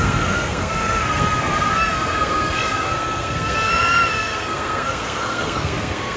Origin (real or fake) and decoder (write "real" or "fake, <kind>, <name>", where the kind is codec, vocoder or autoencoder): fake, codec, SNAC